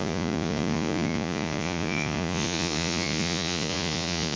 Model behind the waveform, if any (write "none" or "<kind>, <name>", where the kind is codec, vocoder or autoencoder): vocoder, Vocos